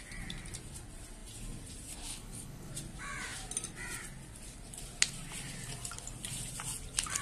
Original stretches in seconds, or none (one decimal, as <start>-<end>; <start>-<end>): 0.0-2.1; 2.7-7.2